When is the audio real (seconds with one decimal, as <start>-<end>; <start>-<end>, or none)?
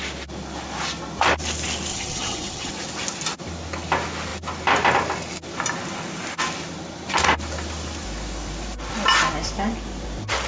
0.0-1.9; 2.7-10.5